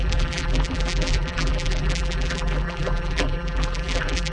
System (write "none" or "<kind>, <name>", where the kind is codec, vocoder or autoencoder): vocoder, BigVGAN v2